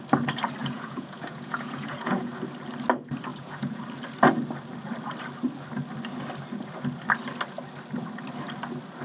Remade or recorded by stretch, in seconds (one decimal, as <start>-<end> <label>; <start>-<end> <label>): 0.0-0.6 recorded; 0.6-2.3 remade; 2.3-3.3 recorded; 3.3-3.8 remade; 3.8-9.0 recorded